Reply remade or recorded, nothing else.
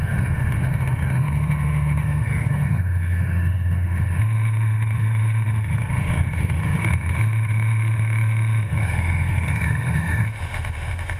remade